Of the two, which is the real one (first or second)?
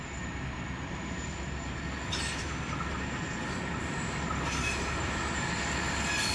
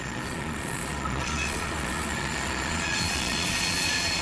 first